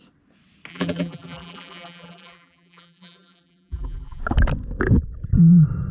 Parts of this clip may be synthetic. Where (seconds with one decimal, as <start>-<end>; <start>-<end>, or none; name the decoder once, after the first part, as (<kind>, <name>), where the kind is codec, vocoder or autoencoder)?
0.7-4.2 (vocoder, BigVGAN v2)